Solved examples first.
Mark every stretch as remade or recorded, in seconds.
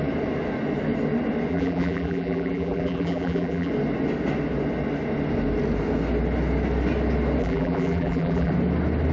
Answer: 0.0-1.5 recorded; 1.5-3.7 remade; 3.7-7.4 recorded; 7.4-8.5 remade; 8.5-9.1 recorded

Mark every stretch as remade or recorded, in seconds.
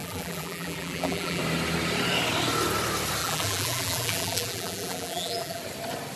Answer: 0.0-1.4 remade; 1.4-3.2 recorded; 3.2-5.6 remade; 5.6-6.2 recorded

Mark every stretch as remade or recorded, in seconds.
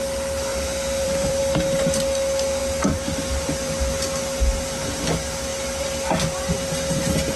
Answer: 0.0-0.5 recorded; 0.5-1.4 remade; 1.4-2.6 recorded; 2.6-3.7 remade; 3.7-7.4 recorded